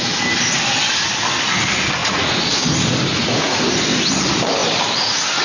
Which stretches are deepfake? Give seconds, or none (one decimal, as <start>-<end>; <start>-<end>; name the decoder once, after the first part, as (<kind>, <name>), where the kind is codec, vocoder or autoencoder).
2.0-2.5 (vocoder, Vocos); 3.1-3.6